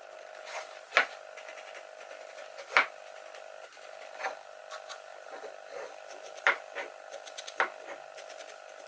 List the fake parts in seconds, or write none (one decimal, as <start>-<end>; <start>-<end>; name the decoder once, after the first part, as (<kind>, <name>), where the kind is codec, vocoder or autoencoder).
2.4-4.6 (vocoder, BigVGAN v2)